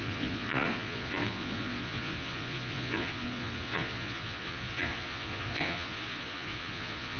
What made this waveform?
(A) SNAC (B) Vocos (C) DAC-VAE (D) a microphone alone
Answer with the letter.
B